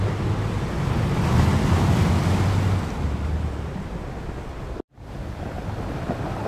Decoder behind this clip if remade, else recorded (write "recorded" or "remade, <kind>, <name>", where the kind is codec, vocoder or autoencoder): recorded